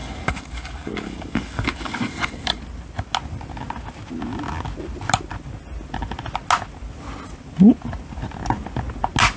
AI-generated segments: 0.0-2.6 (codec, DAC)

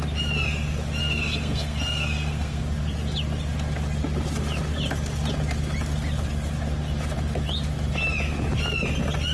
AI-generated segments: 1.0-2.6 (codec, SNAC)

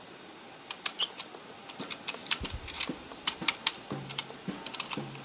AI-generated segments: none

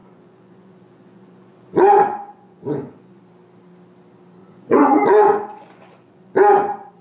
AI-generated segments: 0.0-3.2 (vocoder, Vocos); 4.4-6.3